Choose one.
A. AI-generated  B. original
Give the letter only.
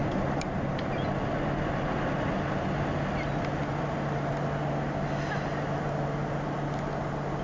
B